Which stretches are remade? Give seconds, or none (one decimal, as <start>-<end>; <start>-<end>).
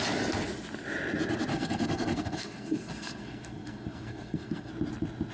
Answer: 1.5-4.7